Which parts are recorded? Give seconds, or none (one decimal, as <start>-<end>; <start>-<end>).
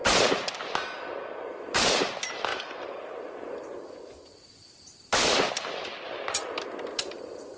0.0-1.5